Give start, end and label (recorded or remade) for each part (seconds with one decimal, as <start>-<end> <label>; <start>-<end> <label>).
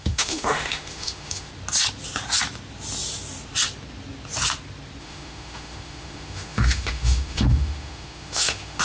0.0-1.5 remade; 1.5-5.0 recorded; 5.0-8.8 remade